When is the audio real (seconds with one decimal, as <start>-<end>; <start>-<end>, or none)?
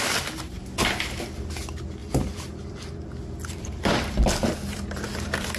0.0-2.0